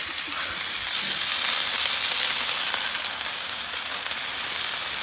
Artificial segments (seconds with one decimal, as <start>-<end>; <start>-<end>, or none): 3.1-3.7